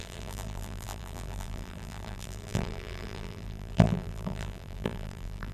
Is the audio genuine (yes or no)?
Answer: no